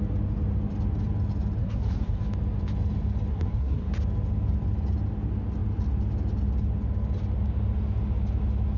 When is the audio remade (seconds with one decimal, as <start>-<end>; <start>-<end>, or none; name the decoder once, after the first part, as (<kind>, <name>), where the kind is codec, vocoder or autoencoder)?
1.6-2.2 (codec, SNAC); 3.3-3.9

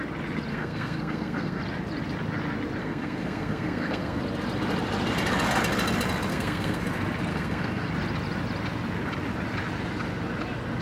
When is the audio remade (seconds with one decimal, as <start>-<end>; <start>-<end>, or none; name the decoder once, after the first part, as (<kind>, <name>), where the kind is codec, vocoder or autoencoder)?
0.5-1.6 (codec, SNAC); 2.8-4.2; 6.3-6.8; 7.3-7.9

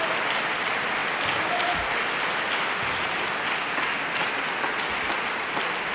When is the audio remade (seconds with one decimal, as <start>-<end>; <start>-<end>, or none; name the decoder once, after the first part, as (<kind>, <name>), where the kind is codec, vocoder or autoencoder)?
none

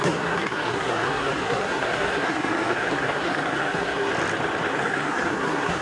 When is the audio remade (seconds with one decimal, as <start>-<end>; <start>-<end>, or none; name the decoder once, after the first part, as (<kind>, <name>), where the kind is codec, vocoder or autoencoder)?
0.0-4.1 (codec, SNAC); 4.7-5.8

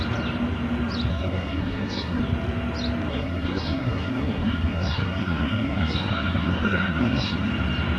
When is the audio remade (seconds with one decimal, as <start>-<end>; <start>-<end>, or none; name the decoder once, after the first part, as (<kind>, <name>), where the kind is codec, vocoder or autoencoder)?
1.1-2.2 (codec, SNAC); 3.1-7.5

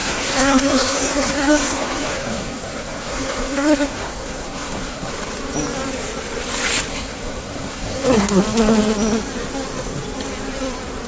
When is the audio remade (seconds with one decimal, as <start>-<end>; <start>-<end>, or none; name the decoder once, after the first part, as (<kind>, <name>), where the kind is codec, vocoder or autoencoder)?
0.0-5.1 (codec, SNAC); 6.9-8.4

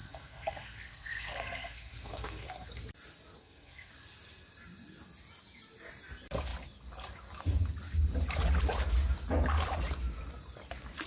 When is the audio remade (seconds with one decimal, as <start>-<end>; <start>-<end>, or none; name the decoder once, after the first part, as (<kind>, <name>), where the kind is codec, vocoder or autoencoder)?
0.0-2.7 (codec, SNAC); 3.4-3.9